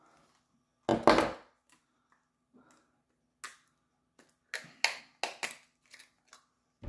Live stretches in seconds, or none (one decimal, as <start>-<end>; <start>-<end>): 0.0-6.9